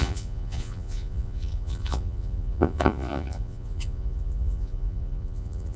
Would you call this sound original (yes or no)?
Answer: no